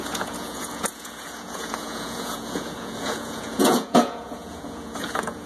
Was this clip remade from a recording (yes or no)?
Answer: yes